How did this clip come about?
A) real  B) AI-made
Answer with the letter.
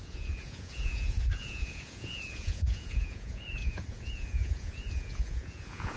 B